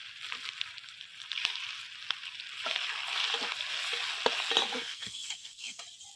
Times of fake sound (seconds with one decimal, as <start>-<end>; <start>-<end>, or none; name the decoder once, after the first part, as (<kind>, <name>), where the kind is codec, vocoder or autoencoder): 4.7-5.8 (codec, SNAC)